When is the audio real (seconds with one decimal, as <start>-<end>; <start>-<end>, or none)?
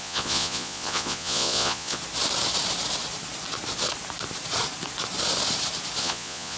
2.0-6.0